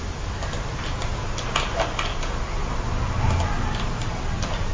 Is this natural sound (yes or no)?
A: yes